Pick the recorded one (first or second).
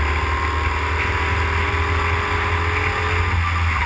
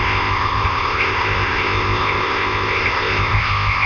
first